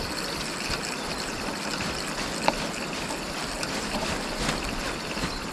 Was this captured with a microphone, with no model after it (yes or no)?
yes